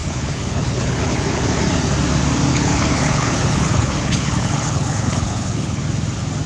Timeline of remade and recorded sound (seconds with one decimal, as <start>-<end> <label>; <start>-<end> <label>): 0.0-1.6 remade; 1.6-2.5 recorded; 2.5-5.8 remade; 5.8-6.5 recorded